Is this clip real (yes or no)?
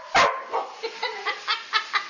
yes